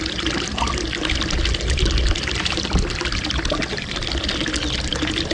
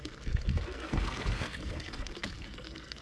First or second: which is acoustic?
first